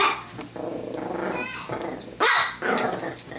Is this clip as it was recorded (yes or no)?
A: yes